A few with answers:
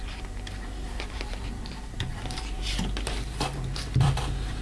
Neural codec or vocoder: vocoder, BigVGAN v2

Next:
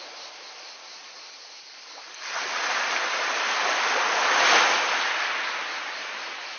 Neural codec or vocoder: none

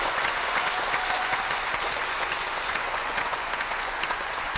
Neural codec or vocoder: vocoder, Vocos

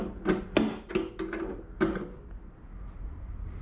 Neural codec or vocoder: none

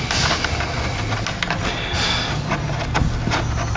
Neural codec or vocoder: none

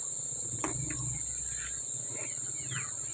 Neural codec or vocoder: none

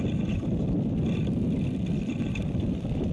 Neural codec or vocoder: none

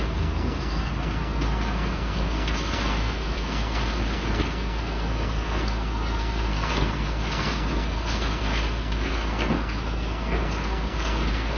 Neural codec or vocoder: codec, SNAC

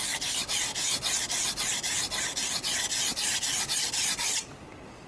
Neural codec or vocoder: none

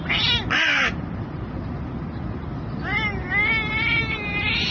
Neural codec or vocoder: none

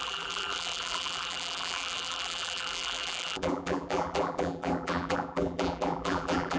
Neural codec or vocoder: vocoder, BigVGAN v2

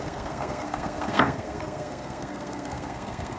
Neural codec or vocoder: codec, SNAC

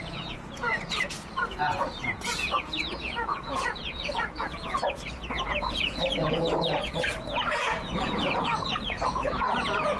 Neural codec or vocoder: vocoder, Vocos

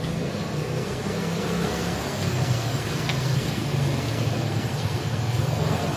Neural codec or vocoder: codec, SNAC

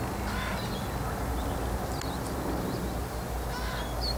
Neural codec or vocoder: none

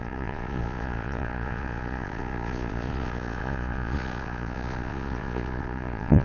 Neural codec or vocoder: vocoder, Vocos